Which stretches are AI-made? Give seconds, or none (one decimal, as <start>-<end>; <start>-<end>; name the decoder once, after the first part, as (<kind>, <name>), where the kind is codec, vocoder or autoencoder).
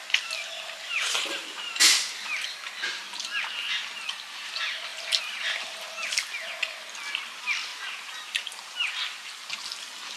4.9-5.8 (vocoder, BigVGAN v2); 7.7-8.9